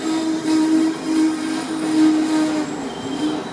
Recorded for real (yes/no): yes